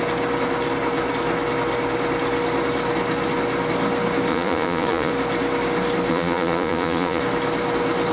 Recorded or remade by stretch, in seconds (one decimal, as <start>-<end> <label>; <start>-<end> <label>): 0.0-4.3 recorded; 4.3-5.1 remade; 5.1-6.1 recorded; 6.1-7.2 remade; 7.2-8.1 recorded

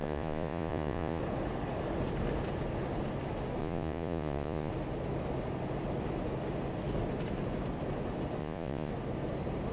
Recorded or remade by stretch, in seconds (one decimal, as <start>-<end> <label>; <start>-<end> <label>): 0.0-1.2 remade; 1.2-3.6 recorded; 3.6-4.7 remade; 4.7-8.4 recorded; 8.4-8.9 remade; 8.9-9.7 recorded

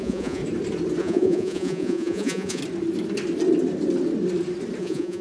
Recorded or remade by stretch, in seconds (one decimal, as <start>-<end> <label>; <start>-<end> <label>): 0.0-0.4 remade; 0.4-1.0 recorded; 1.0-2.6 remade; 2.6-4.8 recorded; 4.8-5.2 remade

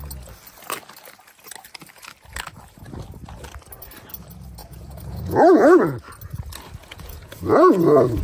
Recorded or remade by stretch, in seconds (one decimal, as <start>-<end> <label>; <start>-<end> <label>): 0.0-4.6 recorded; 4.6-5.6 remade; 5.6-6.8 recorded; 6.8-8.2 remade